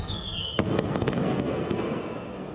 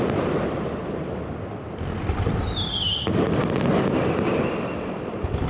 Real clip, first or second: second